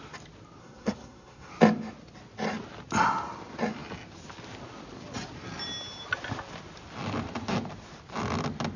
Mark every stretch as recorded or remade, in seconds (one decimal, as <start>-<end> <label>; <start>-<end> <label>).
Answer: 0.0-0.6 recorded; 0.6-1.5 remade; 1.5-8.8 recorded